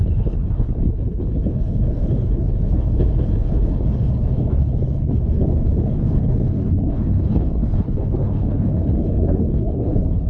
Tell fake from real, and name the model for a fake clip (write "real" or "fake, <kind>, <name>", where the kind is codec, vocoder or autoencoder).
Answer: fake, codec, HILCodec